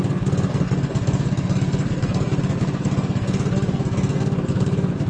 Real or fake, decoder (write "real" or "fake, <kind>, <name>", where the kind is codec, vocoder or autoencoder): fake, codec, SNAC